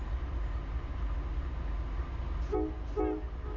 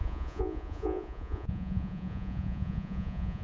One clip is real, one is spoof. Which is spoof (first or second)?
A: second